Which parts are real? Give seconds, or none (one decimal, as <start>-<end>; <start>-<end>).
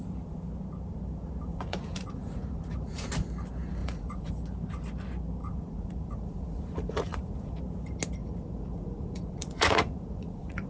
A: 0.0-1.5; 3.1-3.8; 4.3-5.4; 7.6-8.2